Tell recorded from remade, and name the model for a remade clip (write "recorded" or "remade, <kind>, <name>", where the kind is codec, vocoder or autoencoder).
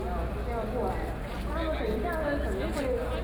recorded